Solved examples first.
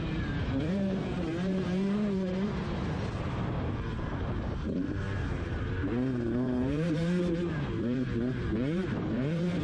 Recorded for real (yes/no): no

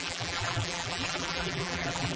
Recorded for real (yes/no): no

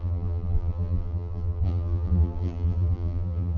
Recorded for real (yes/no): no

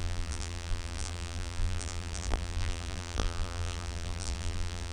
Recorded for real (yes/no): no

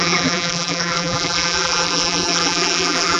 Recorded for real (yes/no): no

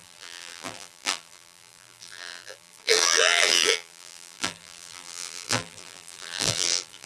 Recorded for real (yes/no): no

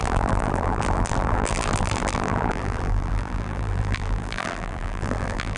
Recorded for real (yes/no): no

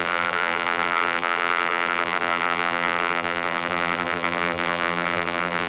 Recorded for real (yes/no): no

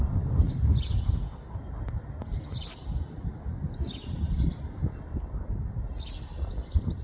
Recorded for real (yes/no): yes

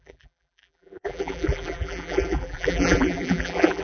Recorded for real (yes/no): no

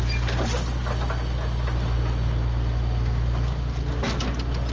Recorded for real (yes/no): yes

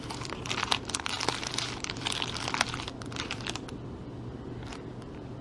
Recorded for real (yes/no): no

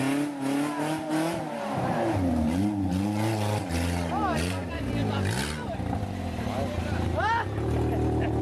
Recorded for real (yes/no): yes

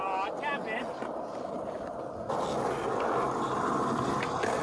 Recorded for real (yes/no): yes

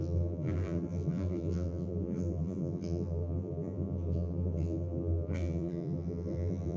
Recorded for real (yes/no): no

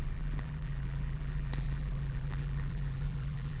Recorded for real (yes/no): no